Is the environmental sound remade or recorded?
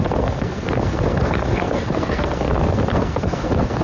remade